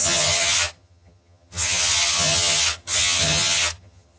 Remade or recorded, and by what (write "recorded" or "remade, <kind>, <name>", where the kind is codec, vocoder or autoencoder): remade, vocoder, HiFi-GAN